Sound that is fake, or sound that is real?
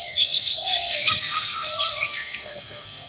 fake